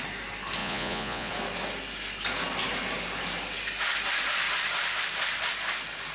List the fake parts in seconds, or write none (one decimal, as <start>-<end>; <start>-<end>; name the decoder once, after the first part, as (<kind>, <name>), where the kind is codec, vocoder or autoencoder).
0.6-1.3 (vocoder, Vocos)